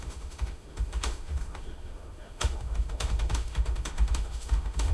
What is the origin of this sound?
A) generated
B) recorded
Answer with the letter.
A